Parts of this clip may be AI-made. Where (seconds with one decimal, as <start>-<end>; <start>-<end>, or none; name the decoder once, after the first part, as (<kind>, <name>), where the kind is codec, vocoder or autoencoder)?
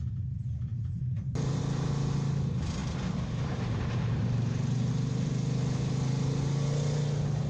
0.7-1.6 (vocoder, BigVGAN v2); 2.8-4.9